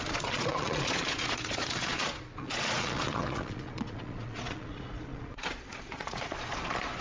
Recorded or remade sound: remade